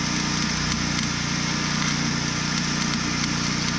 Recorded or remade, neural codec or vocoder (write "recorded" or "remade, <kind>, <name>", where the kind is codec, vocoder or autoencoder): recorded